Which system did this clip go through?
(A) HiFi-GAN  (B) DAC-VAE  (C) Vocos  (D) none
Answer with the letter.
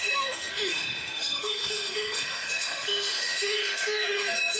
B